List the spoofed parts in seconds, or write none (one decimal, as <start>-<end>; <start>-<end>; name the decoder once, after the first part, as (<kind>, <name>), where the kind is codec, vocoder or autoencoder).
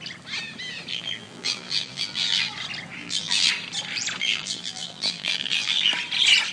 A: 0.9-2.5 (vocoder, BigVGAN v2); 3.0-3.5; 4.2-5.9